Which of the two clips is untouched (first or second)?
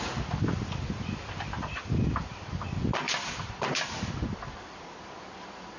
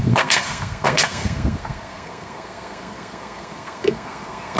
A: first